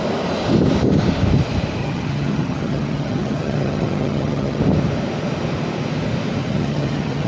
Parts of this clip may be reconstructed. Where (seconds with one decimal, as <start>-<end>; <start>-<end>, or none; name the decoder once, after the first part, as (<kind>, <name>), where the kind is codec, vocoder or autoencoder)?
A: 1.8-4.6 (vocoder, HiFi-GAN); 6.4-7.3